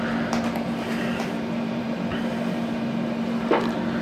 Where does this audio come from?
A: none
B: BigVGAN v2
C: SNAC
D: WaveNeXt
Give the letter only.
B